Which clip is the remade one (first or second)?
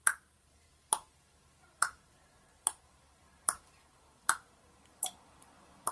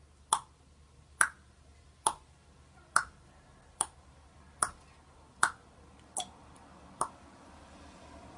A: first